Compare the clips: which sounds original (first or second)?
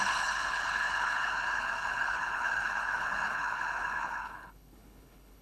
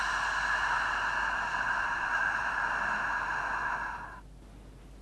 second